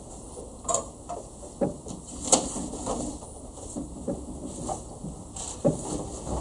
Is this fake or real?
real